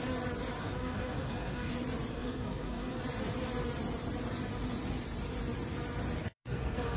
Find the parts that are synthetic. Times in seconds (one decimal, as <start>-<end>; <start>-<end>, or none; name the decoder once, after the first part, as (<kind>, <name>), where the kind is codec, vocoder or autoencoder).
0.6-1.7 (codec, SNAC); 2.1-3.0; 6.2-7.0